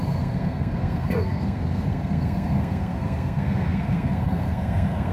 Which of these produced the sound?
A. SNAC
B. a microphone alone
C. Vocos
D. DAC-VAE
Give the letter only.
A